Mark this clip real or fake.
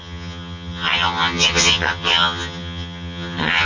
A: fake